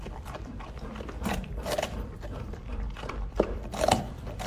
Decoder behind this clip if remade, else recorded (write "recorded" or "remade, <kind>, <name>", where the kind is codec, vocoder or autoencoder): remade, vocoder, BigVGAN v2